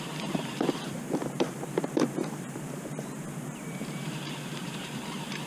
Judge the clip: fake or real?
fake